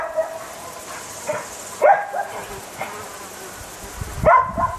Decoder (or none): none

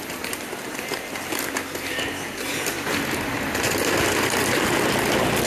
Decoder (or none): none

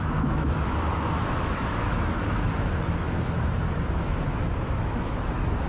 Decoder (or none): autoencoder, DAC-VAE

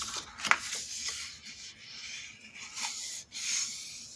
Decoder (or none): none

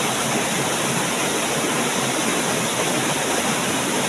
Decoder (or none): none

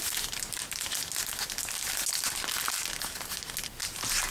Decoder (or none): none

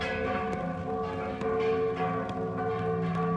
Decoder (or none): none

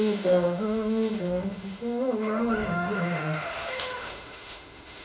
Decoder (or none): autoencoder, DAC-VAE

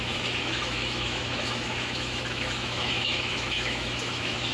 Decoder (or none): autoencoder, DAC-VAE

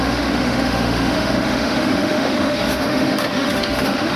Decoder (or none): autoencoder, DAC-VAE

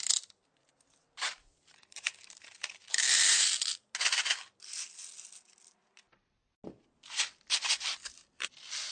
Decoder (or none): none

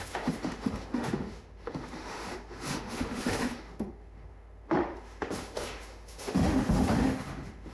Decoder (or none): autoencoder, DAC-VAE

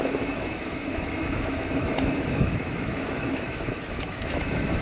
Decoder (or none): autoencoder, DAC-VAE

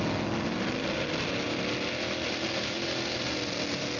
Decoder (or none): none